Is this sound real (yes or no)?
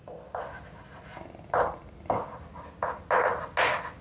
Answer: yes